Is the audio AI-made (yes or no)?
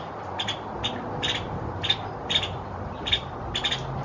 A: no